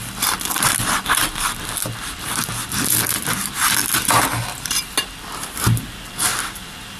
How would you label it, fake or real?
fake